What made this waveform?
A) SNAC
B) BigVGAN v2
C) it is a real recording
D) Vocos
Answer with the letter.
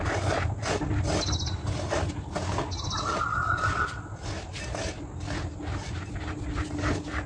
C